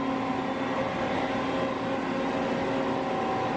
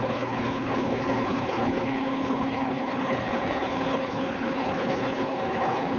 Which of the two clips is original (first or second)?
first